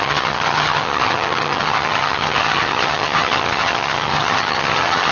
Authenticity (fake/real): fake